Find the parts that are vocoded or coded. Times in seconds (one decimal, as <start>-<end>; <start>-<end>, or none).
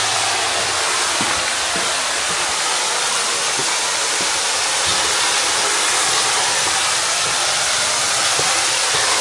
none